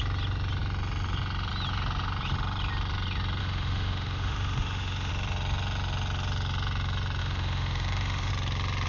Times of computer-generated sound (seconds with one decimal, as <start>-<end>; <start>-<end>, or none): 3.4-5.1; 7.2-8.3